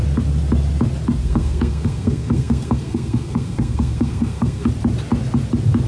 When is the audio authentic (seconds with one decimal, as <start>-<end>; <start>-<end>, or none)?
0.0-1.2; 4.7-5.9